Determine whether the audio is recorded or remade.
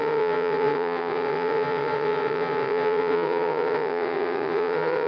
remade